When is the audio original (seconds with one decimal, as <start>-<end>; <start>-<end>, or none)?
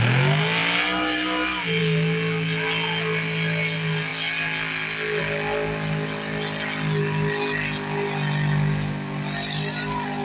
0.0-10.2